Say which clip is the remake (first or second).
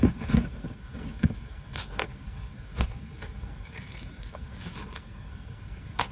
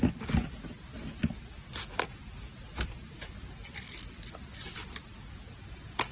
first